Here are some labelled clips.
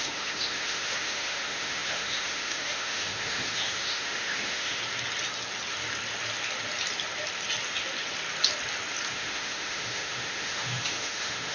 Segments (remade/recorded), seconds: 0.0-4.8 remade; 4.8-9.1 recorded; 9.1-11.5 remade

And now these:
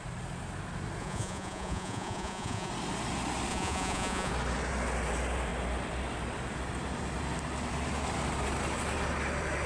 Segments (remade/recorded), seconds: 0.0-1.0 recorded; 1.0-2.7 remade; 2.7-3.5 recorded; 3.5-4.3 remade; 4.3-9.7 recorded

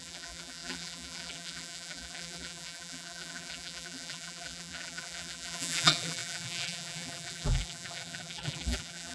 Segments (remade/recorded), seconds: 0.0-9.1 remade

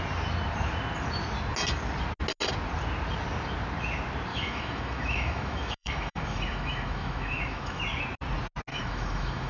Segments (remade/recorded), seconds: 0.0-4.3 recorded; 4.3-7.8 remade; 7.8-8.7 recorded; 8.7-9.5 remade

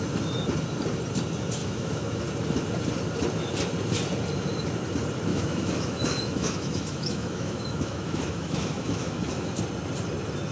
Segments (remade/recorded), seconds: 0.0-1.6 recorded; 1.6-2.2 remade; 2.2-5.3 recorded; 5.3-9.5 remade; 9.5-10.5 recorded

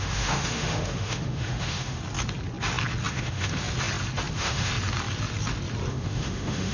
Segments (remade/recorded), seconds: 0.0-2.0 remade; 2.0-3.1 recorded; 3.1-3.6 remade; 3.6-4.3 recorded; 4.3-4.7 remade; 4.7-5.9 recorded; 5.9-6.7 remade